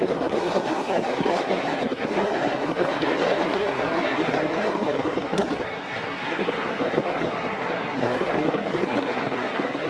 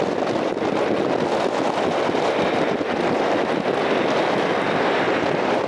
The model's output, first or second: first